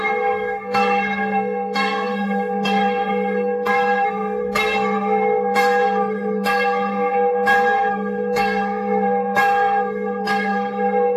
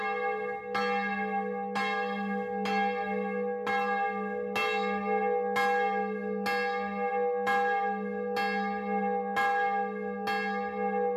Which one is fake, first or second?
first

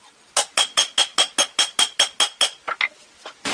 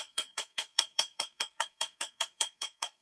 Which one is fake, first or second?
second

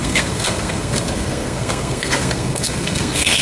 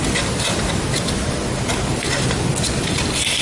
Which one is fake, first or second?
first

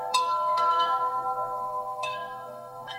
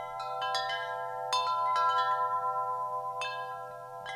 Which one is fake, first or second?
first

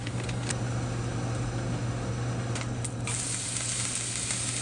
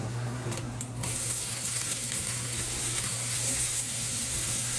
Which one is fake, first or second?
second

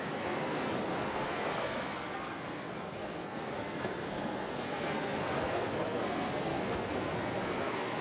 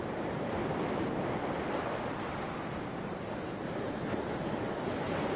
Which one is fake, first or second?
first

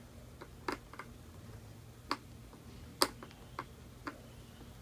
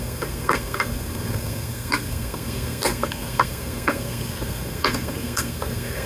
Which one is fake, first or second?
second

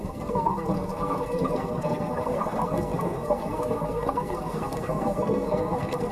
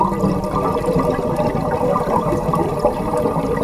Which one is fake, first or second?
first